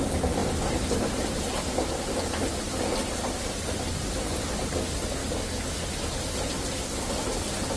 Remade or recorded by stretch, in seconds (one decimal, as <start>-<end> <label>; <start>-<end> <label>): 0.0-7.8 recorded